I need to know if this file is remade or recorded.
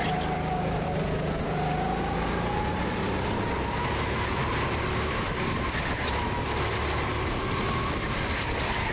recorded